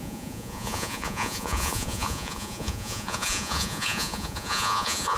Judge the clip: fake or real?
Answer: fake